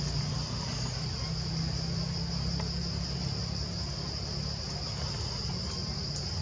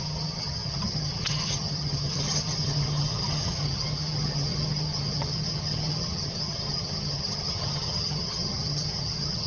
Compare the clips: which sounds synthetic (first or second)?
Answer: second